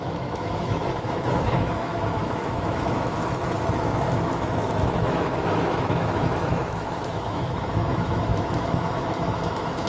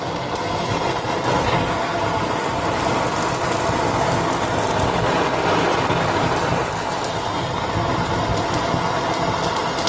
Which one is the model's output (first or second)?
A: first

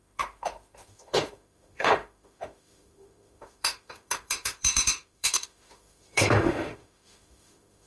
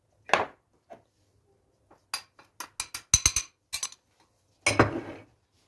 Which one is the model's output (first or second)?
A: first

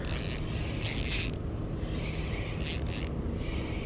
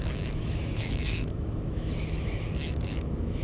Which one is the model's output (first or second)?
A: second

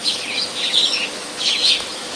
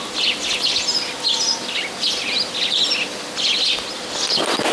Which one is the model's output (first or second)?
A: first